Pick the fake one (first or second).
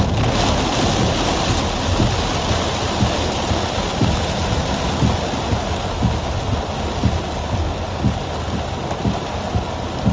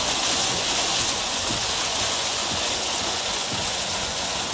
second